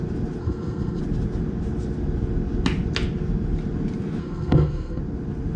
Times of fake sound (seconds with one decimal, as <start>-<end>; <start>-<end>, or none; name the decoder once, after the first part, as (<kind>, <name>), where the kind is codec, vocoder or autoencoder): 0.4-1.0 (codec, SNAC); 4.2-5.0